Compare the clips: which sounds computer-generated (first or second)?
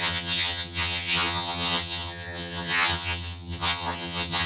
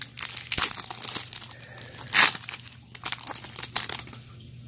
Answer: first